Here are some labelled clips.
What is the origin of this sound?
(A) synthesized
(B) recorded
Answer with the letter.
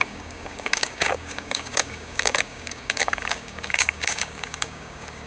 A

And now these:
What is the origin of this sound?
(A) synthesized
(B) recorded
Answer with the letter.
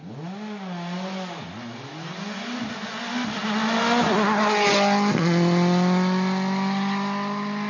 B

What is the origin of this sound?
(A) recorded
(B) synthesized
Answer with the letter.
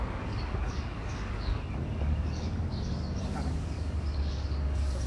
B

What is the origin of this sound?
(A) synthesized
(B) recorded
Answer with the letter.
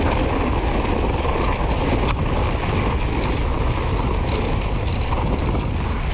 B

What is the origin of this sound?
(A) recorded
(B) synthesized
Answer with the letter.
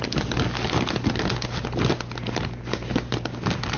A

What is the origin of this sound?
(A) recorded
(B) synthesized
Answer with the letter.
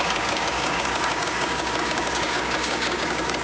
B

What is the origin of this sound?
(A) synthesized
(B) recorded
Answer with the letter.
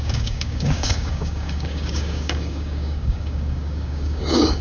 A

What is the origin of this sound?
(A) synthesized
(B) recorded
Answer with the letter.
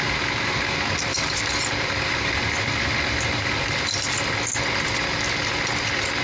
B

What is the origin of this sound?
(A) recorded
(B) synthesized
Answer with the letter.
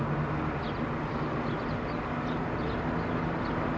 A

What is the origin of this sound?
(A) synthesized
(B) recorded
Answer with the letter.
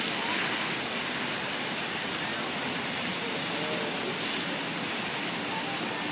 B